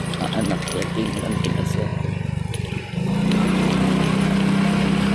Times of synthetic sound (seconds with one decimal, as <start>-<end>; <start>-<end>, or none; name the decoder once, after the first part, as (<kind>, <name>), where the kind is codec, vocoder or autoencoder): none